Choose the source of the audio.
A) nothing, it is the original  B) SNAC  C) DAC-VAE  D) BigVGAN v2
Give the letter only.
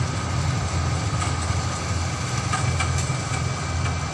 A